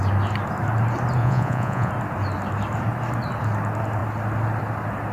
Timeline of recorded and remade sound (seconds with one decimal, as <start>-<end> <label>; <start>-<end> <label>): 0.0-1.2 recorded; 1.2-1.9 remade; 1.9-5.1 recorded